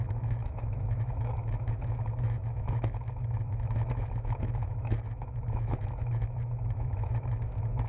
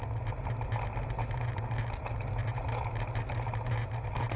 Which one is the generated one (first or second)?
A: first